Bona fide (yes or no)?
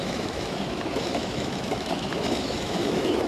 no